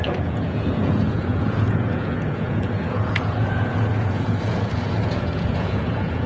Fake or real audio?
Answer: fake